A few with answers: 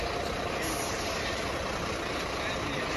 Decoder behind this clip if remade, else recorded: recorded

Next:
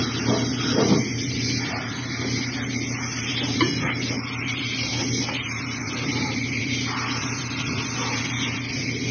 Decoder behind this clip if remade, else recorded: remade, vocoder, BigVGAN v2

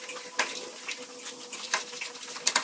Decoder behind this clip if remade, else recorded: recorded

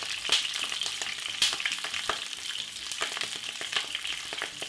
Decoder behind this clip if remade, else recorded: remade, vocoder, BigVGAN v2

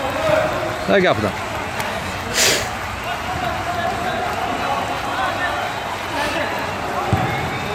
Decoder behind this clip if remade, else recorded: recorded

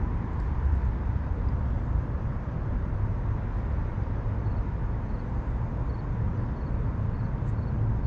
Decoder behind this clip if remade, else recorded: recorded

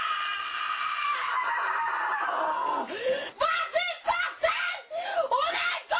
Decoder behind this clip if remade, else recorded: remade, vocoder, BigVGAN v2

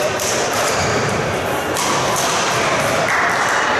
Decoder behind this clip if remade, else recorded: remade, vocoder, BigVGAN v2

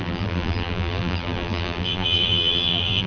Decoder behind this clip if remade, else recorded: remade, vocoder, BigVGAN v2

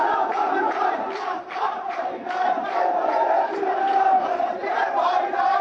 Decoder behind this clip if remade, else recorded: remade, vocoder, BigVGAN v2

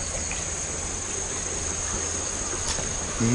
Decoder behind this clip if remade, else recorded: recorded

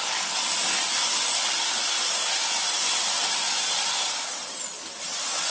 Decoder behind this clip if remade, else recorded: recorded